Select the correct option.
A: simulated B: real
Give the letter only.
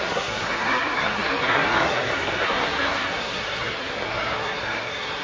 A